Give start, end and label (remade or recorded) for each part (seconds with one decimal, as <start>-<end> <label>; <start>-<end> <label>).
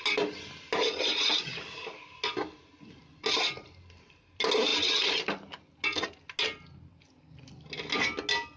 0.0-8.6 recorded